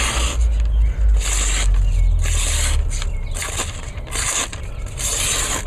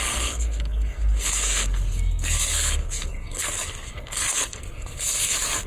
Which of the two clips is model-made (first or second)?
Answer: second